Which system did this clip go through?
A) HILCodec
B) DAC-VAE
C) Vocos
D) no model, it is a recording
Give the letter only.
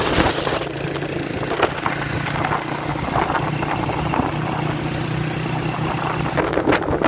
D